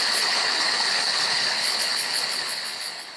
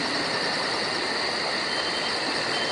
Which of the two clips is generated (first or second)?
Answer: first